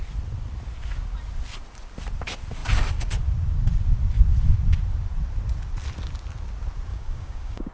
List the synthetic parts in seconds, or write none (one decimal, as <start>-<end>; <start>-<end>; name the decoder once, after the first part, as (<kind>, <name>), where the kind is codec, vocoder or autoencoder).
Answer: 6.9-7.7 (codec, DAC)